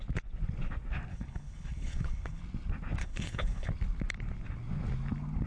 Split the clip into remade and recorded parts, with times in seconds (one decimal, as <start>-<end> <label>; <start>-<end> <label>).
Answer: 0.0-1.1 recorded; 1.1-2.4 remade; 2.4-3.0 recorded; 3.0-3.7 remade; 3.7-5.5 recorded